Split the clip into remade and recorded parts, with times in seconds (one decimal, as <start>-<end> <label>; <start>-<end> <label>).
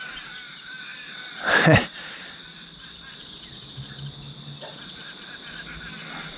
0.0-6.4 recorded